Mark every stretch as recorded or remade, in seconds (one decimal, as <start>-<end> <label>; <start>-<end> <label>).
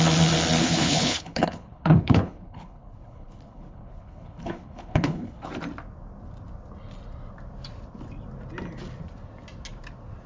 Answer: 0.0-0.6 recorded; 0.6-5.5 remade; 5.5-10.3 recorded